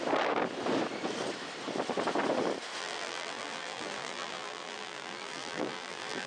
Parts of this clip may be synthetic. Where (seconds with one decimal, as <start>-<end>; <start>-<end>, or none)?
2.8-6.3